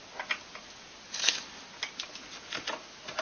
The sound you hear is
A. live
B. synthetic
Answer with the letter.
A